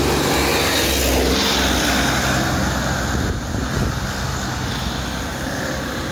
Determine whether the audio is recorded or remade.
recorded